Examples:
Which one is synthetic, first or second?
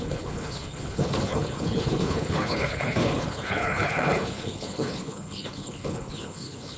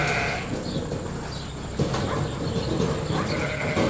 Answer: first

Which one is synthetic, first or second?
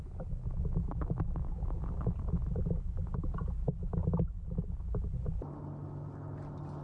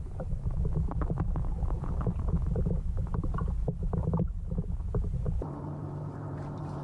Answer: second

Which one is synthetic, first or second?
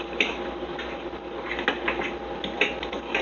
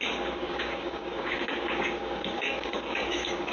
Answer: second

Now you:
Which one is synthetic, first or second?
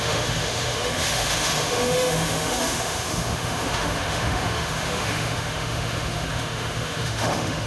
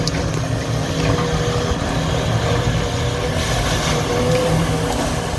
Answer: first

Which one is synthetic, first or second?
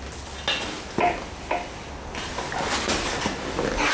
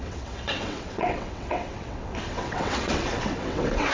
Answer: second